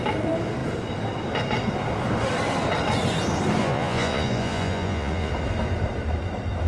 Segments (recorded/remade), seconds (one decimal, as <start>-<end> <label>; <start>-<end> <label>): 0.0-3.6 recorded; 3.6-5.3 remade; 5.3-6.7 recorded